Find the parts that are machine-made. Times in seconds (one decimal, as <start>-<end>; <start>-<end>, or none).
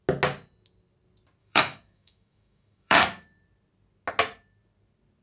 1.4-3.0